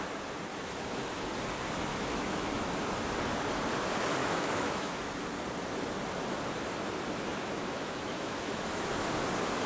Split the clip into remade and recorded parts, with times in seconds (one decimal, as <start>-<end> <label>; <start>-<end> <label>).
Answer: 0.0-0.5 recorded; 0.5-1.3 remade; 1.3-1.9 recorded; 1.9-2.7 remade; 2.7-4.2 recorded; 4.2-5.0 remade; 5.0-7.3 recorded; 7.3-9.1 remade; 9.1-9.7 recorded